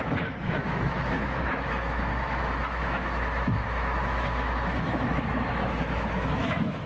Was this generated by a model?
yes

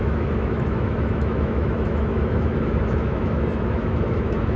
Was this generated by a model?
yes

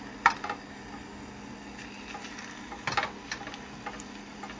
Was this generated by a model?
no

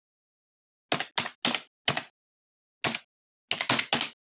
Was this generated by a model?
no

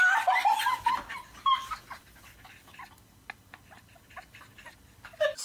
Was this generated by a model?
no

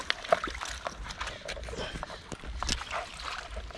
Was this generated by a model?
no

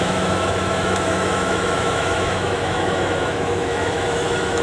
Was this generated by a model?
yes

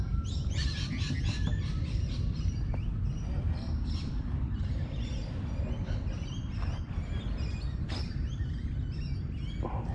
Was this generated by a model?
no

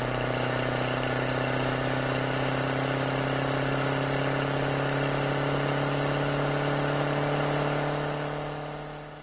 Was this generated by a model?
no